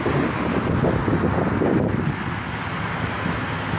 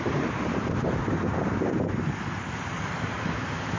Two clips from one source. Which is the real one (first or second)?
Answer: first